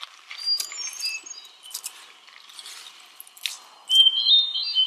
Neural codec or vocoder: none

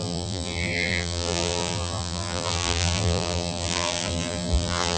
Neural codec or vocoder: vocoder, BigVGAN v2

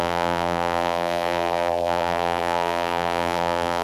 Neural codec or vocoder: vocoder, BigVGAN v2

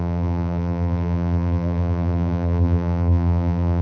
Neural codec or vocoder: vocoder, BigVGAN v2